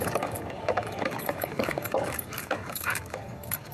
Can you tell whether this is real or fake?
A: fake